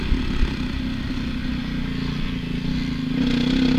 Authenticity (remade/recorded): recorded